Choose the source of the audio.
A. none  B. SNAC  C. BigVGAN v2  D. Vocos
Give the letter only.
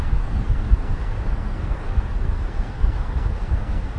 B